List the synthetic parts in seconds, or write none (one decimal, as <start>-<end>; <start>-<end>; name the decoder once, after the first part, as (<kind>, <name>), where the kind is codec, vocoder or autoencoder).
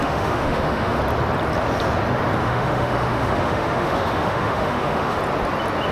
0.0-1.0 (autoencoder, DAC-VAE); 2.4-5.2